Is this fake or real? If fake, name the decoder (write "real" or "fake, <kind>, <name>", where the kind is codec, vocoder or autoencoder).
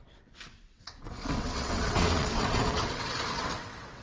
fake, vocoder, WaveNeXt